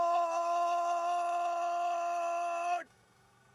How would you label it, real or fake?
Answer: fake